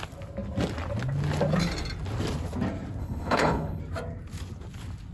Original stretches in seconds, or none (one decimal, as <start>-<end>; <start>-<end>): 0.0-3.0; 3.8-5.1